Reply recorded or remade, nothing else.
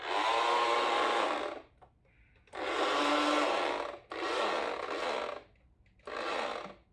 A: recorded